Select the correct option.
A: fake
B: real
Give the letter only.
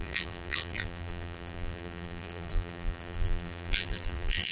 A